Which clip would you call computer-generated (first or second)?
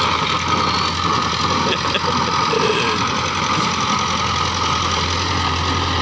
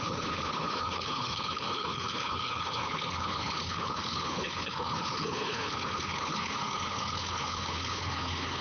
second